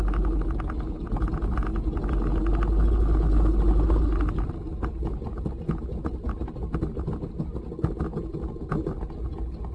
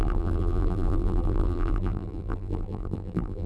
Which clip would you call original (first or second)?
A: first